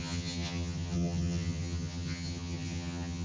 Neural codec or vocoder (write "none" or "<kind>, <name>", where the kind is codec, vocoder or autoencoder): vocoder, HiFi-GAN